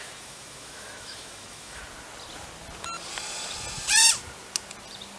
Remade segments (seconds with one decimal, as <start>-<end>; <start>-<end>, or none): 0.0-1.8